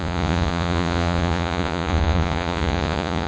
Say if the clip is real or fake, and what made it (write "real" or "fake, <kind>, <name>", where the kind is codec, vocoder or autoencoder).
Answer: fake, vocoder, Vocos